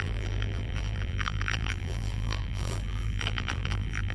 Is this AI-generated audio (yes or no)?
yes